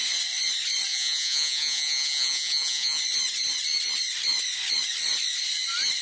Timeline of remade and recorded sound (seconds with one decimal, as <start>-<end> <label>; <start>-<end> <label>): 0.0-0.9 recorded; 0.9-3.0 remade; 3.0-6.0 recorded